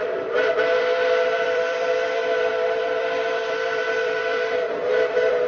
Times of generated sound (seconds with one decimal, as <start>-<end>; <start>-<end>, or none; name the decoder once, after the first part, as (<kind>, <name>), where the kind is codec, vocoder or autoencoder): 0.0-5.5 (vocoder, BigVGAN v2)